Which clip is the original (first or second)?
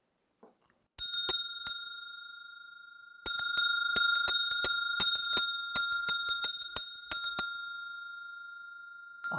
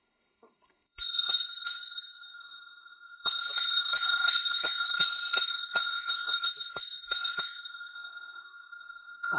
first